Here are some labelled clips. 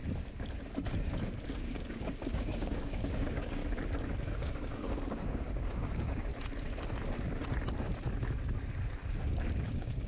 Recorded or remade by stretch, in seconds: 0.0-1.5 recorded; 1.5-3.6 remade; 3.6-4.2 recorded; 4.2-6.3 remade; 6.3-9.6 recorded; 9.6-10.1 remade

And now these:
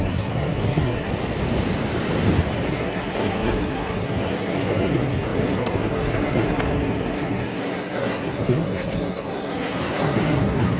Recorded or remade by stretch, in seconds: 0.0-1.1 remade; 1.1-2.7 recorded; 2.7-10.8 remade

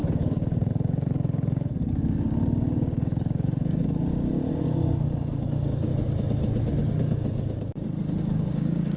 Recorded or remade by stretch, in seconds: 0.0-5.9 remade; 5.9-6.9 recorded; 6.9-9.0 remade

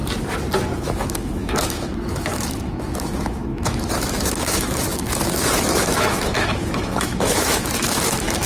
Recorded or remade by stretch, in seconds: 0.0-0.8 recorded; 0.8-8.5 remade

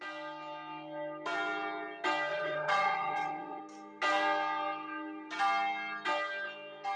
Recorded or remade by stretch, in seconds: 0.0-2.3 recorded; 2.3-3.6 remade; 3.6-7.0 recorded